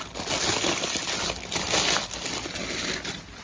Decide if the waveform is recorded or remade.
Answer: recorded